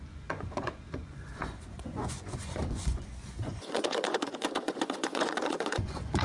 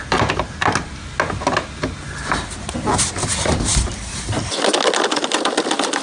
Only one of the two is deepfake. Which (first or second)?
first